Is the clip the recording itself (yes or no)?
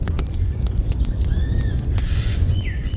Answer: no